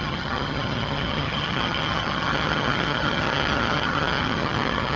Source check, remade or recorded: remade